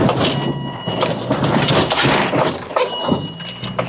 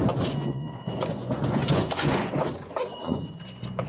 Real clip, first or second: first